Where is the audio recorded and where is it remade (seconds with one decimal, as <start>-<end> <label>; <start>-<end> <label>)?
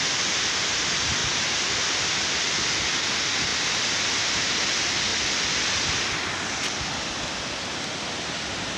0.0-8.8 recorded